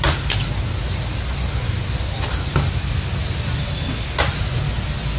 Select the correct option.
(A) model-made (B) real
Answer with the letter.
B